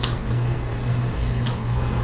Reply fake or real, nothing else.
fake